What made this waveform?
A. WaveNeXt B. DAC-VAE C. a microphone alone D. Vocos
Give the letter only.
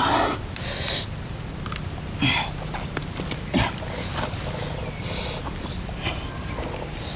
C